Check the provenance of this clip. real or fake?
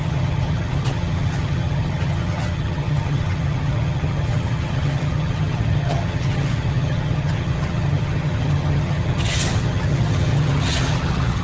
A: fake